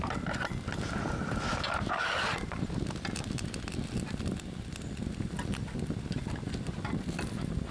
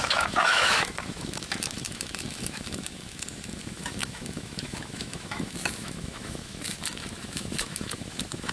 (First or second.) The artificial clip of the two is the second